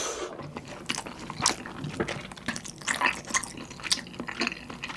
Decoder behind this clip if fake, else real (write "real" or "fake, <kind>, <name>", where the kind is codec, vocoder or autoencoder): real